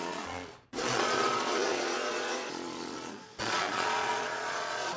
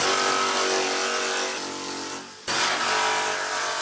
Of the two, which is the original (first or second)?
second